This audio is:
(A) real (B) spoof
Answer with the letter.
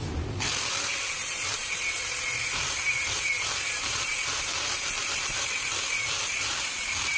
B